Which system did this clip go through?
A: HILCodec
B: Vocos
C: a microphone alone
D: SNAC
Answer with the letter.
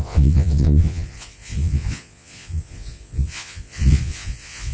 B